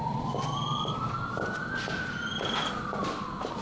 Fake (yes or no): no